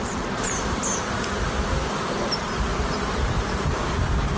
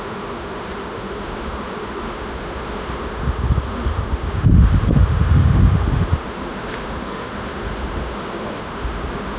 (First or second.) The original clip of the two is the first